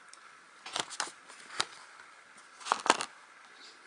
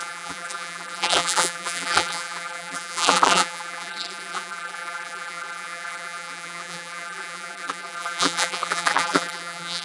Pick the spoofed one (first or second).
second